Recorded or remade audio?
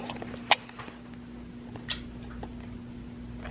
recorded